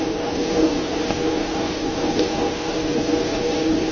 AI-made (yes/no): yes